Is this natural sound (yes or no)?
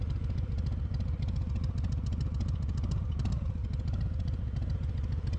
yes